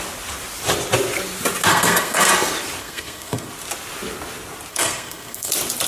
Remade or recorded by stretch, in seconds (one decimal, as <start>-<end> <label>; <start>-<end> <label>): 0.0-1.7 recorded; 1.7-2.3 remade; 2.3-2.8 recorded; 2.8-3.5 remade; 3.5-4.7 recorded; 4.7-5.5 remade; 5.5-5.9 recorded